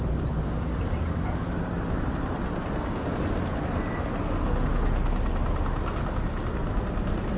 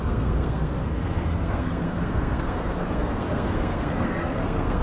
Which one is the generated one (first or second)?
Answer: second